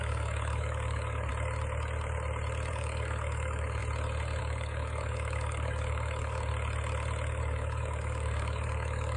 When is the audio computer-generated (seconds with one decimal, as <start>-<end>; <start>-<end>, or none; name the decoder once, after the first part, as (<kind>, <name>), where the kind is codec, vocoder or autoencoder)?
0.0-1.3 (codec, DAC); 2.7-3.8; 4.4-6.5; 7.4-9.2